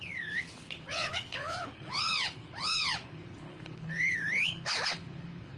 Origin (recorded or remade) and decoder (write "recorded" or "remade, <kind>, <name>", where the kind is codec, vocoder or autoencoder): remade, codec, HILCodec